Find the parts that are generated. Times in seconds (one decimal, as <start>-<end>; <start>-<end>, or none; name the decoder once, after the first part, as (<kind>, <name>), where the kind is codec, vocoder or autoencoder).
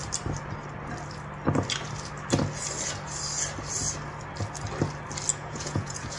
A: 5.3-6.2 (vocoder, Vocos)